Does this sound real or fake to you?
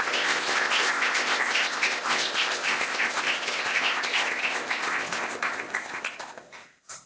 fake